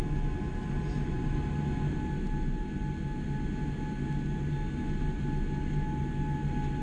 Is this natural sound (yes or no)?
yes